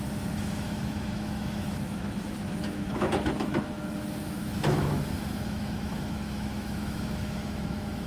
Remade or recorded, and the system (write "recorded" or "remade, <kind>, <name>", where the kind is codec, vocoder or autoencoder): remade, autoencoder, DAC-VAE